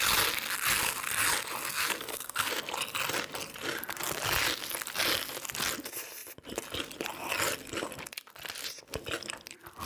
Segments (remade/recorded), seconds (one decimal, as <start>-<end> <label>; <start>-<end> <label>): 0.0-1.7 recorded; 1.7-2.5 remade; 2.5-9.9 recorded